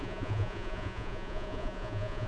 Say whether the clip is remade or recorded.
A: remade